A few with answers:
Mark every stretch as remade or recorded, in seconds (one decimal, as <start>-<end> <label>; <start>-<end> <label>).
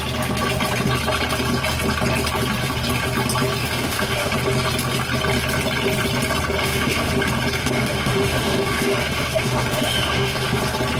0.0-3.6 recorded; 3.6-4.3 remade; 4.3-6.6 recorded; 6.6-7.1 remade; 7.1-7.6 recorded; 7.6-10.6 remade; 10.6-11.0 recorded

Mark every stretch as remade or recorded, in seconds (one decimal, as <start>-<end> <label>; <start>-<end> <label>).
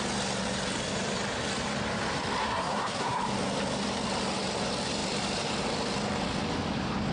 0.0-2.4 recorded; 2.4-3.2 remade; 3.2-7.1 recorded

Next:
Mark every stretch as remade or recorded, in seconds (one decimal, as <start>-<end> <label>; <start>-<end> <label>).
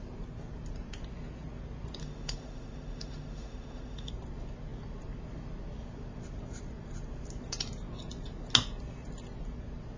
0.0-2.0 recorded; 2.0-4.1 remade; 4.1-10.0 recorded